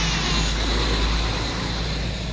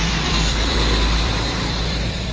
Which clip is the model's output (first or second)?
second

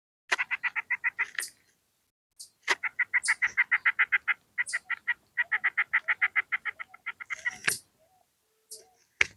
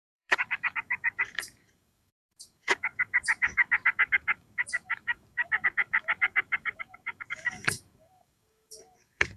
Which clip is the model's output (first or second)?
second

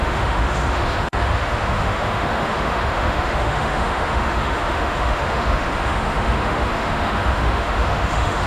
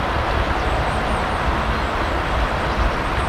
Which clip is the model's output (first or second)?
first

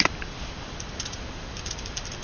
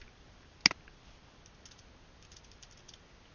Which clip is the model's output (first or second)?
first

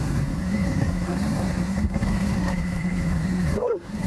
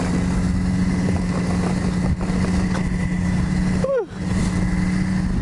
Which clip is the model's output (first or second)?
first